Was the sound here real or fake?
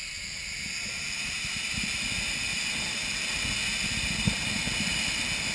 real